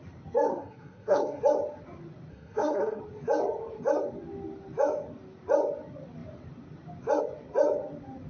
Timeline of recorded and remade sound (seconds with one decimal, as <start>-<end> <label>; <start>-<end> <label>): 0.0-0.5 recorded; 0.5-1.4 remade; 1.4-2.3 recorded; 2.3-3.0 remade; 3.0-8.3 recorded